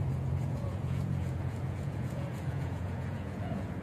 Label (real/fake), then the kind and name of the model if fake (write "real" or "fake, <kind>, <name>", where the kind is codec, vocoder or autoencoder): fake, vocoder, Vocos